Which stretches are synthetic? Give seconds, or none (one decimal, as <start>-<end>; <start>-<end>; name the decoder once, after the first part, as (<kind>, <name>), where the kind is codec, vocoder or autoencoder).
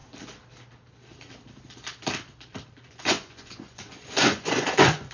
2.9-5.1 (vocoder, Vocos)